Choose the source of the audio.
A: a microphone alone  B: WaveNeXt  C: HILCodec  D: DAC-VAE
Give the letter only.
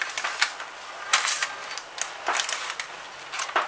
A